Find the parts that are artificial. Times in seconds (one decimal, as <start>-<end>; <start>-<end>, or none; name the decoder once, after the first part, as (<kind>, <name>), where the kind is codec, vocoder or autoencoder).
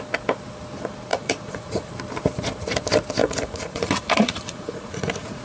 1.1-1.9 (vocoder, Vocos); 3.2-5.4